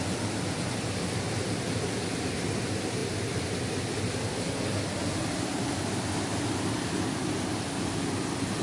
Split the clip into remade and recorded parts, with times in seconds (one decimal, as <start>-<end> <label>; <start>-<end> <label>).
0.0-8.6 recorded